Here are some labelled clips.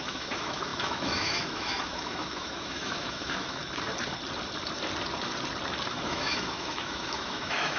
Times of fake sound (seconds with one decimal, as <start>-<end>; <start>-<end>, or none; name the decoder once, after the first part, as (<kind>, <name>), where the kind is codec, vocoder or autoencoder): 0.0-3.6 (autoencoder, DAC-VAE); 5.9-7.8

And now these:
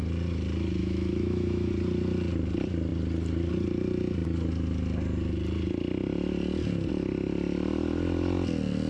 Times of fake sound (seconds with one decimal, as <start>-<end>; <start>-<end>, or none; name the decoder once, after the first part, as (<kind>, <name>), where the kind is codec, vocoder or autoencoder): 0.8-1.7 (autoencoder, DAC-VAE)

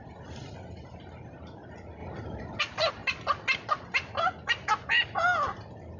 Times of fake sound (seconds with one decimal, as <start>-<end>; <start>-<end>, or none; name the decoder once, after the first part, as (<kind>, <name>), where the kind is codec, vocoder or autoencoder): 0.0-2.0 (vocoder, BigVGAN v2); 2.6-3.0

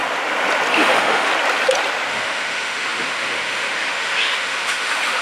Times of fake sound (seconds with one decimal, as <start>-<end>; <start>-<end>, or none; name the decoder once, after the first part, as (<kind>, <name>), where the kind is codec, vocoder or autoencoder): 0.7-1.3 (autoencoder, DAC-VAE); 2.1-5.2